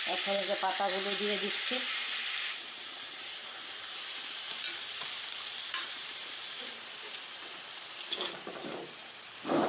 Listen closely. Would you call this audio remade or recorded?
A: remade